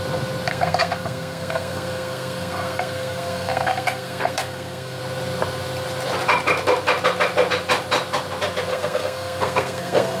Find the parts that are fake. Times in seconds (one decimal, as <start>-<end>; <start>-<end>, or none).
0.5-5.0; 8.7-10.2